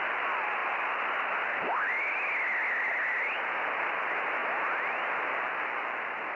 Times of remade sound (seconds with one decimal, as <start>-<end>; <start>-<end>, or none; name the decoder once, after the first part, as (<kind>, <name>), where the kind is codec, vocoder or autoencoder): none